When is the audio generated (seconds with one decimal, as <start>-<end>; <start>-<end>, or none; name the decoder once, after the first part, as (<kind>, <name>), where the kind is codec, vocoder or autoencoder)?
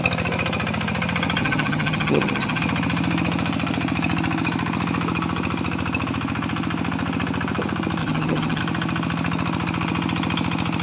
1.4-2.6 (vocoder, HiFi-GAN); 8.0-8.6